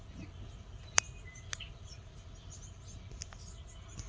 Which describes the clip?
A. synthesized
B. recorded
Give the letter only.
B